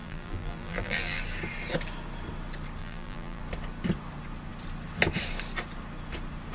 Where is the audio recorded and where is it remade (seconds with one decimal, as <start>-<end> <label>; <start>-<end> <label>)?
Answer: 0.0-1.2 remade; 1.2-2.8 recorded; 2.8-3.4 remade; 3.4-6.5 recorded